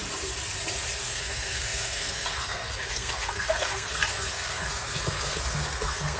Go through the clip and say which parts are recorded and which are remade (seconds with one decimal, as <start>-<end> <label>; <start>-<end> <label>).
0.0-1.0 recorded; 1.0-6.2 remade